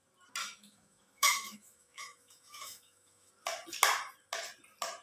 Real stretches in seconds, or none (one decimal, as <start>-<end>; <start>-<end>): 0.0-0.4; 3.3-5.0